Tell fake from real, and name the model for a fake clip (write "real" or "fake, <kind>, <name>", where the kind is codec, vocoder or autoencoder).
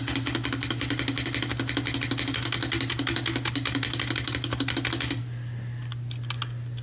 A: real